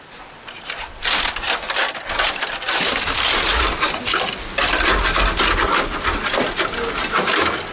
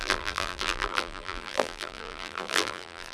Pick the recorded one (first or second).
first